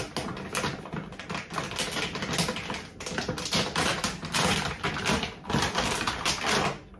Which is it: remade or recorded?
recorded